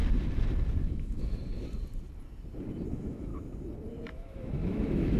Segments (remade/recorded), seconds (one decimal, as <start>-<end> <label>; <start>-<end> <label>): 0.0-0.8 recorded; 0.8-1.4 remade; 1.4-2.9 recorded; 2.9-3.3 remade; 3.3-4.1 recorded; 4.1-5.2 remade